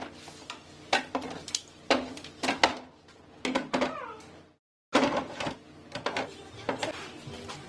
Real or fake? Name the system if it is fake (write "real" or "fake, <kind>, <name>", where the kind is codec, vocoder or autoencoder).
real